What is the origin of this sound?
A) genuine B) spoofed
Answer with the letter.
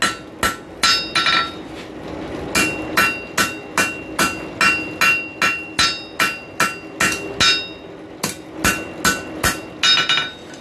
A